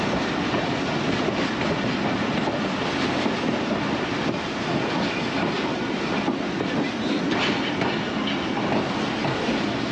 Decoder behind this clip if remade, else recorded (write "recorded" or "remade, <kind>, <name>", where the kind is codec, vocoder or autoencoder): recorded